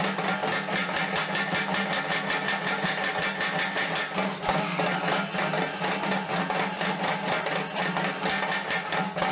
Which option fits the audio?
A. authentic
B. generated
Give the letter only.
A